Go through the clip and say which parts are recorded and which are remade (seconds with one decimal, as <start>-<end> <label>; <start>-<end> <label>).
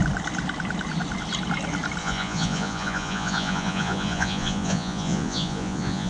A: 0.0-2.0 recorded; 2.0-6.1 remade